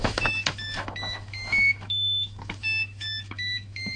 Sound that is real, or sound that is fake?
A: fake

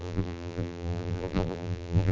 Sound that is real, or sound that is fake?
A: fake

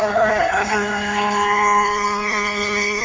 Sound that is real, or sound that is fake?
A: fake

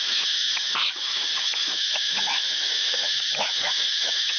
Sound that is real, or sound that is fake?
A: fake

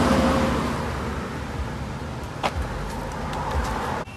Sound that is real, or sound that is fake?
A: real